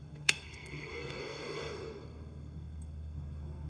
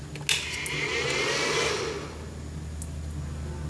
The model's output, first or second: first